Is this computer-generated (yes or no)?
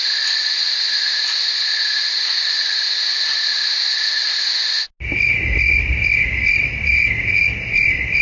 no